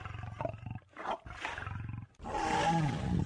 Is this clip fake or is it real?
real